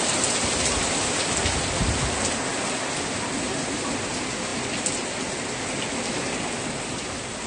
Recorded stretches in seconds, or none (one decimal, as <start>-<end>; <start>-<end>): 0.0-7.5